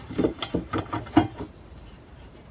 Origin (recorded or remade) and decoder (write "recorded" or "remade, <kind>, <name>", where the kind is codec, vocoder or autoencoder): remade, vocoder, BigVGAN v2